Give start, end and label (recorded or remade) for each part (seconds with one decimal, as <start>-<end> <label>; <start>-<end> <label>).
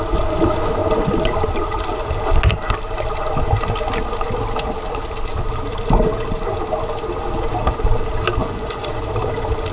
0.0-8.4 recorded; 8.4-8.9 remade; 8.9-9.7 recorded